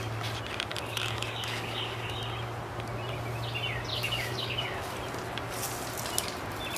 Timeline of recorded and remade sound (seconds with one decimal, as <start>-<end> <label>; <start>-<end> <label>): 0.0-0.7 recorded; 0.7-2.2 remade; 2.2-3.9 recorded; 3.9-4.9 remade; 4.9-6.8 recorded